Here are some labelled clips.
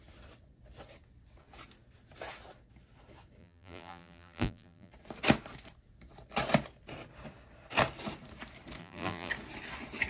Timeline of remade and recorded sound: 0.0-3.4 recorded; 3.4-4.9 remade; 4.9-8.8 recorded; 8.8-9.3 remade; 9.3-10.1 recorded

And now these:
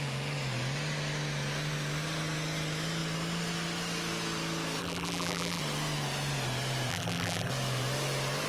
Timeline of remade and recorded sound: 0.0-4.8 recorded; 4.8-5.6 remade; 5.6-6.9 recorded; 6.9-7.5 remade; 7.5-8.5 recorded

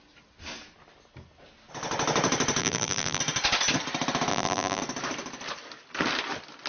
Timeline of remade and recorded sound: 0.0-2.6 recorded; 2.6-3.2 remade; 3.2-4.3 recorded; 4.3-4.8 remade; 4.8-6.7 recorded

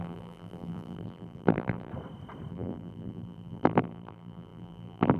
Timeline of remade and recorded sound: 0.0-1.9 remade; 1.9-2.5 recorded; 2.5-5.2 remade

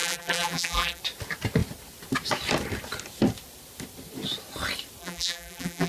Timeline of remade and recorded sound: 0.0-1.0 remade; 1.0-5.0 recorded; 5.0-5.9 remade